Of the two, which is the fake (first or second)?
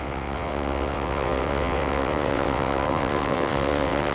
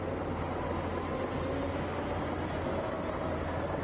first